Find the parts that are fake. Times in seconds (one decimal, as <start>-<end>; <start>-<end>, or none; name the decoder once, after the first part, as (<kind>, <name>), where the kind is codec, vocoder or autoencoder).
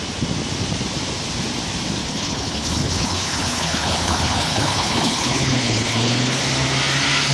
2.0-6.4 (codec, HILCodec)